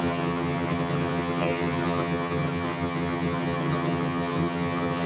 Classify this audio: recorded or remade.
remade